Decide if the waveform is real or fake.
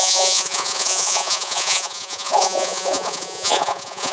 fake